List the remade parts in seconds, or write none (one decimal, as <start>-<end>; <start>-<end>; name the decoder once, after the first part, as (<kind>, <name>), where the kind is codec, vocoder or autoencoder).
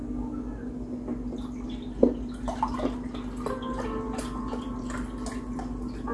none